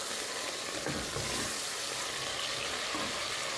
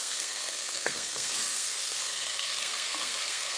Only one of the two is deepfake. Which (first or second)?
second